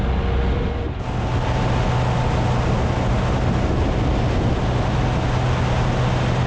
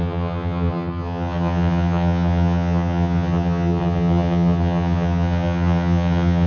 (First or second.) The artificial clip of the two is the second